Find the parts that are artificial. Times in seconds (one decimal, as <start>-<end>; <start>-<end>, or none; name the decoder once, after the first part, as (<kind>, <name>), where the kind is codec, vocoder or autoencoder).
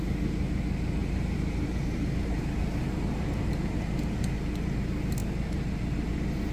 1.0-4.3 (vocoder, BigVGAN v2)